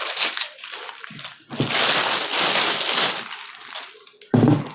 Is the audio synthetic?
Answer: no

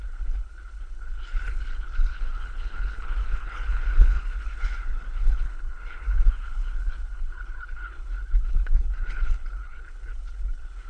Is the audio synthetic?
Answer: yes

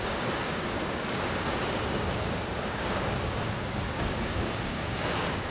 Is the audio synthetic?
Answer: yes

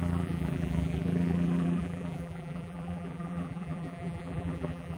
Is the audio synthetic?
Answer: yes